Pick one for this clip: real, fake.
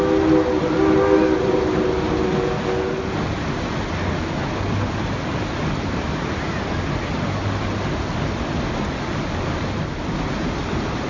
real